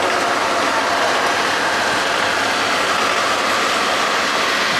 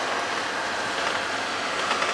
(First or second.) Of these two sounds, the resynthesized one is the first